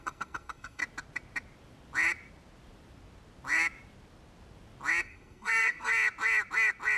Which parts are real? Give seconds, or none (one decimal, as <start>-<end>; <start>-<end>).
0.8-5.0; 5.9-7.0